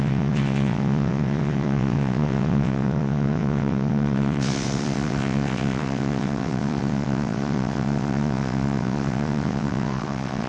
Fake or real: fake